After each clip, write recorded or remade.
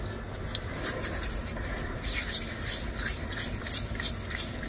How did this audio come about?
recorded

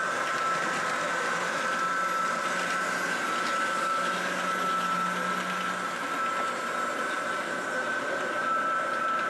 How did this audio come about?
recorded